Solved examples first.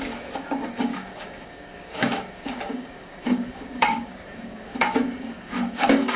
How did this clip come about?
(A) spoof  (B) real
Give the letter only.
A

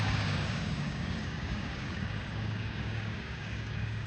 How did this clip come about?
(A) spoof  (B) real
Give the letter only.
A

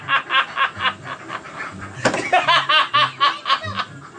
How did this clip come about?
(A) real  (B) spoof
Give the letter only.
A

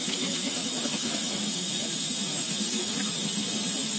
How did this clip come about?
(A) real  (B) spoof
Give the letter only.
B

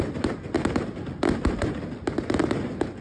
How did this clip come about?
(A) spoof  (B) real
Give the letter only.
B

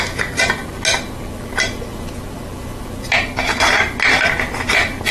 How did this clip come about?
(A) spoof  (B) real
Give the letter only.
B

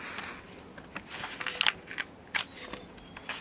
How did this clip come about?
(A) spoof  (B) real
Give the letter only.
B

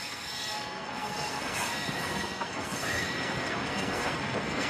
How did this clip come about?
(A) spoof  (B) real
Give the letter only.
A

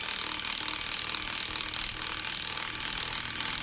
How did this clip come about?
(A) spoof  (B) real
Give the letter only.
B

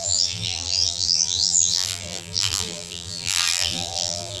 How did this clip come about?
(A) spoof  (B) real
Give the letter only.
A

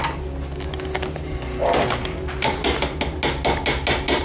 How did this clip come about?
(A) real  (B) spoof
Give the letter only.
A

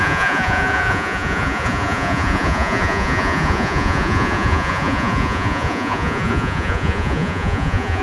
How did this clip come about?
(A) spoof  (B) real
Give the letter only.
A